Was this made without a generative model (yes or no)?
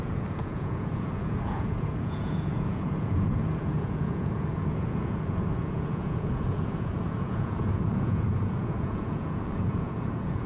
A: no